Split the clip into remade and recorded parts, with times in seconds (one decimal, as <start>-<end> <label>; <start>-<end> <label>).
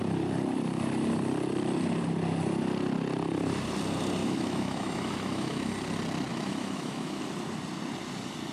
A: 0.0-4.2 recorded; 4.2-5.7 remade; 5.7-6.3 recorded; 6.3-7.2 remade; 7.2-8.5 recorded